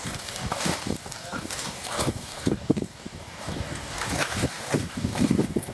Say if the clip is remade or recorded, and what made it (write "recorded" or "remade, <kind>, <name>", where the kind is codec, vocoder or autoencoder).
remade, codec, DAC